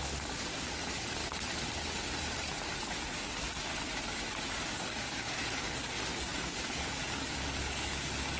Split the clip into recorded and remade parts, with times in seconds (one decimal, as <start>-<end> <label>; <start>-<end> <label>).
0.0-1.2 remade; 1.2-2.8 recorded; 2.8-3.7 remade; 3.7-4.5 recorded; 4.5-8.4 remade